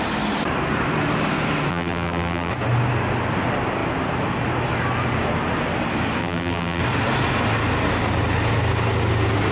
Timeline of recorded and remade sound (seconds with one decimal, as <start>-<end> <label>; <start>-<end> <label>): 0.0-1.7 recorded; 1.7-2.5 remade; 2.5-6.2 recorded; 6.2-6.8 remade; 6.8-9.5 recorded